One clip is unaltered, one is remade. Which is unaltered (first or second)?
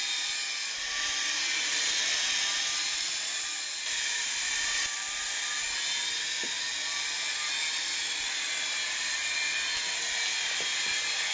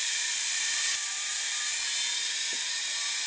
first